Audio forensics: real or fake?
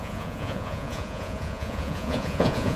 fake